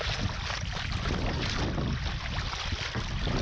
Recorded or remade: recorded